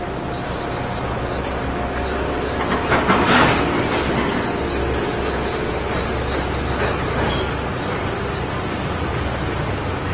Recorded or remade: recorded